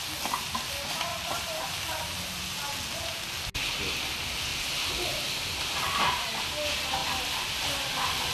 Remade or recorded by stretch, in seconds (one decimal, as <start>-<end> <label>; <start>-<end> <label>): 0.0-1.1 recorded; 1.1-3.4 remade; 3.4-4.5 recorded; 4.5-6.4 remade; 6.4-8.3 recorded